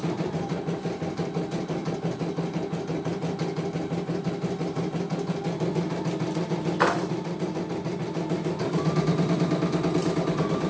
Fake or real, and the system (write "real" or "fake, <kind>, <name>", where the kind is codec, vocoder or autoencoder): real